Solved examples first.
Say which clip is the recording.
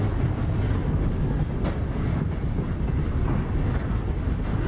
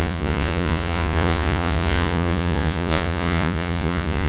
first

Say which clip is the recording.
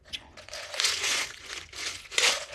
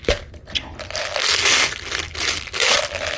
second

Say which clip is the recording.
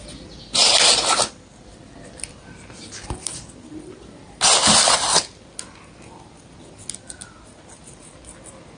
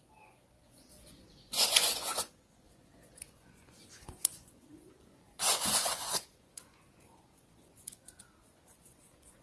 first